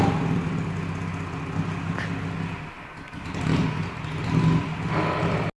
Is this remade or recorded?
recorded